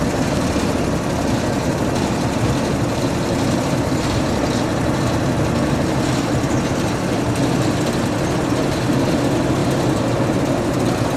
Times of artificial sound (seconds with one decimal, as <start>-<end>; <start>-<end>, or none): none